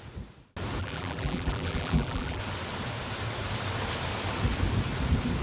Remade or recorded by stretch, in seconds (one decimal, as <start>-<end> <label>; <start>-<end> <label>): 0.0-0.8 recorded; 0.8-2.4 remade; 2.4-5.4 recorded